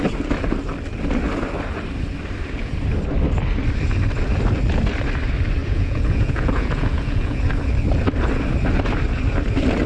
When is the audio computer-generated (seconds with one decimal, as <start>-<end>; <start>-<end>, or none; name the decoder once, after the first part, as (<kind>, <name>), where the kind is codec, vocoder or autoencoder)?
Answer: 5.6-7.4 (vocoder, Vocos)